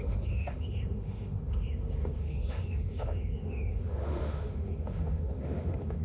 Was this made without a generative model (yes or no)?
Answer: no